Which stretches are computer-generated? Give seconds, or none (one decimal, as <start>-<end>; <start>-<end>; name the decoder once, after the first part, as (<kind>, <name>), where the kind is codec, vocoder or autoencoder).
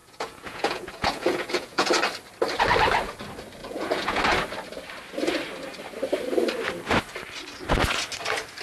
0.0-1.9 (vocoder, Vocos); 3.6-4.2